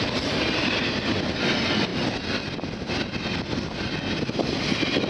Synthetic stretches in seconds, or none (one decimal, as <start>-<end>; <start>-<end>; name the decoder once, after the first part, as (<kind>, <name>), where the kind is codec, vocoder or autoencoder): none